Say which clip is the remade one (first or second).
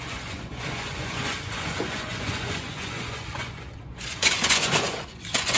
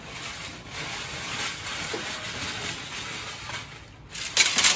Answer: first